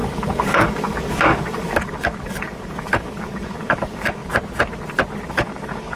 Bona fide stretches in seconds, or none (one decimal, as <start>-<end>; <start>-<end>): 4.2-5.3